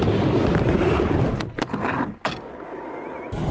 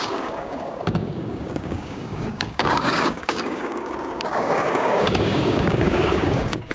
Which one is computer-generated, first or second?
second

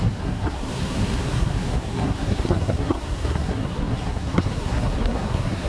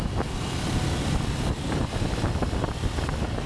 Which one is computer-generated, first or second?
first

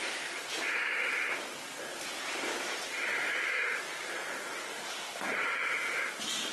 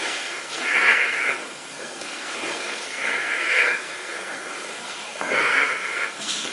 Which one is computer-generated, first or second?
second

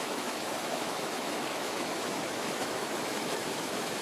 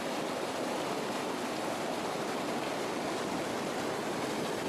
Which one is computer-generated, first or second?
first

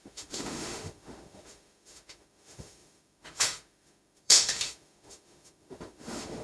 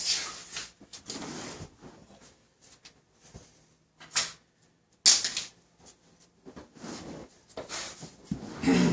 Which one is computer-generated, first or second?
first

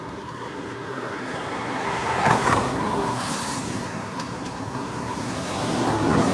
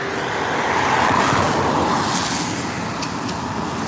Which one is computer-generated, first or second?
first